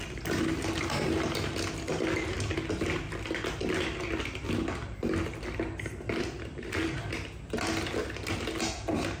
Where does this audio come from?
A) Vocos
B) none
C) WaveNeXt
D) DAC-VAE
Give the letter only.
B